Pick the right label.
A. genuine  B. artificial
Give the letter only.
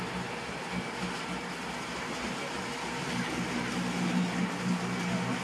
A